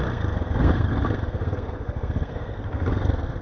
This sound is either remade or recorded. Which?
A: remade